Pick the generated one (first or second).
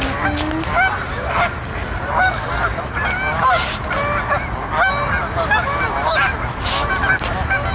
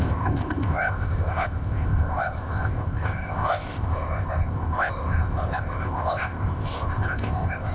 second